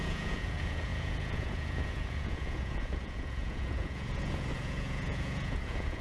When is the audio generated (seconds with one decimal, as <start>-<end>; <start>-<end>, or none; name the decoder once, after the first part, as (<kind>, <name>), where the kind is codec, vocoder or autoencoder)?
0.0-6.0 (vocoder, Vocos)